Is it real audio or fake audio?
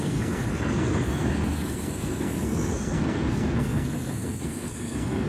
fake